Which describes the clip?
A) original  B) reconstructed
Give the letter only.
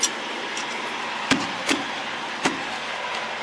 A